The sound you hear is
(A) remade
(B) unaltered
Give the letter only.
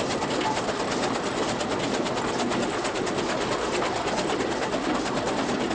B